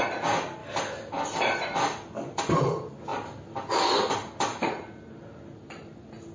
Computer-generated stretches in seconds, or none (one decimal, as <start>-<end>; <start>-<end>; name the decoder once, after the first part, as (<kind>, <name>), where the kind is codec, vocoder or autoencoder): 0.6-2.4 (vocoder, BigVGAN v2); 3.1-3.7

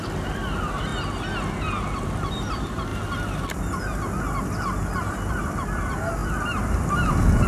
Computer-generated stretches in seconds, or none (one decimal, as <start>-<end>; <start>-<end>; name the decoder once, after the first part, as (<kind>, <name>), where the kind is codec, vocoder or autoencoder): 0.0-0.9 (vocoder, BigVGAN v2); 2.3-2.9; 5.3-7.5

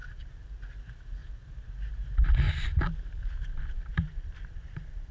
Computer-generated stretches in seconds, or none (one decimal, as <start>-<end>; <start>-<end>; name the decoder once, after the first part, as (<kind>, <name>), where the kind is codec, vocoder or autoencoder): 0.0-0.6 (vocoder, BigVGAN v2); 1.2-4.3

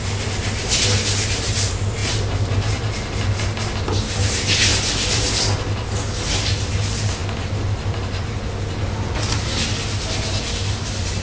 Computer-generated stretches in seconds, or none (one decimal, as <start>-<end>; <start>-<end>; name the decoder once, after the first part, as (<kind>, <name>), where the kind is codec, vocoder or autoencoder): 4.7-5.4 (vocoder, BigVGAN v2)

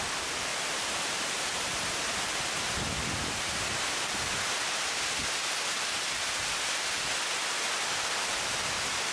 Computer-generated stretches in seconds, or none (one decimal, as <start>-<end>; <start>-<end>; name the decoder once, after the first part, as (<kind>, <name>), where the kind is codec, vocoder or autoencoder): 0.5-2.1 (vocoder, BigVGAN v2)